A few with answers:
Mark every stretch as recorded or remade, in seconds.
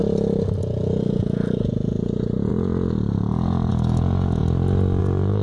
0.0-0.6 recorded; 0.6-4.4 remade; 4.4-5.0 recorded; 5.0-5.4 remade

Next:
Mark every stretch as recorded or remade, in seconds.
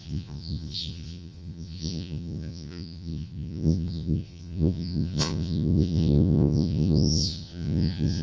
0.0-8.2 remade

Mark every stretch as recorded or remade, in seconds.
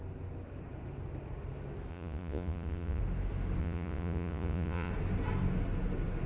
0.0-1.9 recorded; 1.9-3.0 remade; 3.0-3.6 recorded; 3.6-4.9 remade; 4.9-6.3 recorded